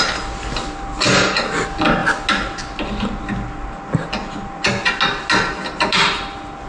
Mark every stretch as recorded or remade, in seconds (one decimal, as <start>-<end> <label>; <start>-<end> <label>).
0.0-6.7 recorded